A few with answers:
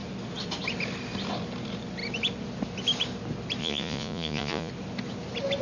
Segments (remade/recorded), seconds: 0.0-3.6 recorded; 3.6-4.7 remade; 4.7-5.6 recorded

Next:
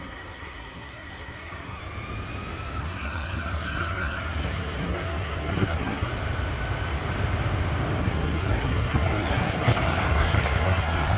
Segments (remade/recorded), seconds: 0.0-1.8 remade; 1.8-2.8 recorded; 2.8-6.1 remade; 6.1-8.0 recorded; 8.0-11.2 remade

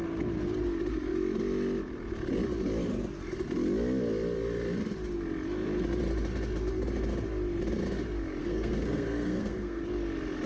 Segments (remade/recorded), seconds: 0.0-8.4 recorded; 8.4-9.8 remade; 9.8-10.5 recorded

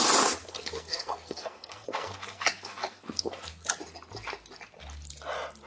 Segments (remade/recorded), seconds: 0.0-0.4 recorded; 0.4-3.7 remade; 3.7-5.7 recorded

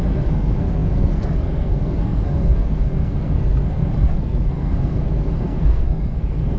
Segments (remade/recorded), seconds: 0.0-6.6 remade

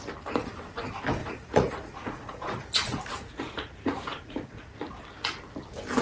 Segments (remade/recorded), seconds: 0.0-1.2 recorded; 1.2-4.8 remade; 4.8-6.0 recorded

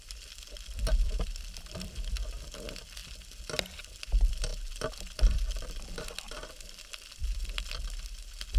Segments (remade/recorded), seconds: 0.0-3.0 remade; 3.0-4.0 recorded; 4.0-8.6 remade

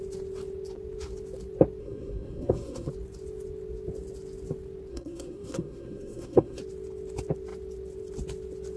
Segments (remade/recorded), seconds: 0.0-1.8 recorded; 1.8-2.9 remade; 2.9-4.9 recorded; 4.9-6.6 remade; 6.6-8.8 recorded